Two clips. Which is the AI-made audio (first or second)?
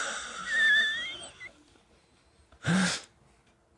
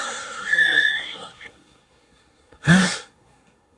second